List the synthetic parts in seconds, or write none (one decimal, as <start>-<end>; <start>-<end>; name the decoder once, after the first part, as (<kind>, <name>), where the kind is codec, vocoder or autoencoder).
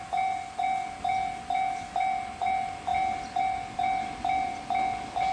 none